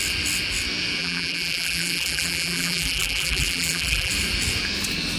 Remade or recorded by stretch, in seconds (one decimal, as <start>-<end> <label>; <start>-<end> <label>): 0.0-1.0 recorded; 1.0-4.1 remade; 4.1-5.2 recorded